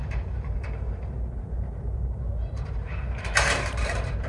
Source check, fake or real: fake